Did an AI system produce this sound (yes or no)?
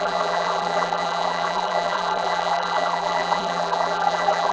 yes